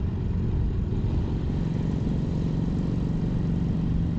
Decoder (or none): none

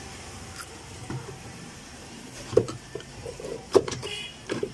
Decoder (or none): vocoder, BigVGAN v2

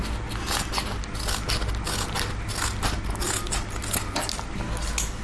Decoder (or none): none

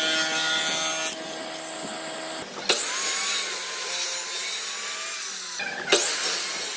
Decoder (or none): none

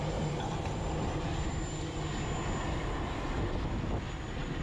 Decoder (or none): none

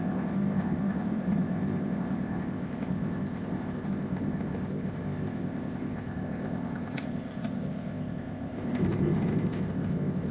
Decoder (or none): codec, ZipCodec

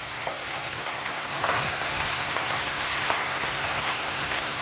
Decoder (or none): codec, SNAC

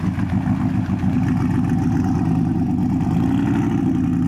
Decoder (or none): none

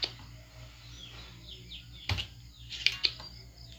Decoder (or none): none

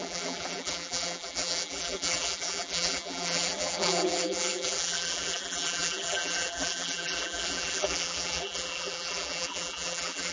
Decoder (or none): vocoder, BigVGAN v2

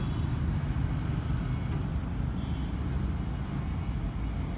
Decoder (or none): none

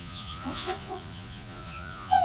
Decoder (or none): vocoder, Vocos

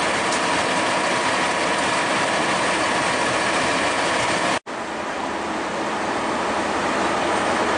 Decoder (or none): none